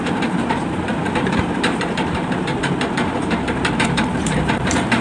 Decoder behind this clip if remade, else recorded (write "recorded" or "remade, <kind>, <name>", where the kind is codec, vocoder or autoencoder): remade, vocoder, BigVGAN v2